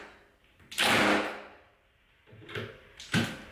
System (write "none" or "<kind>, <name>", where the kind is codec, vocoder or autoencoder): none